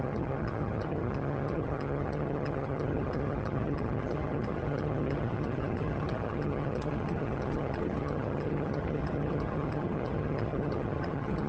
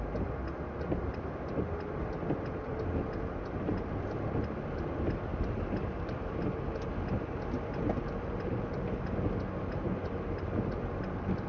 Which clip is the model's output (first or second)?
first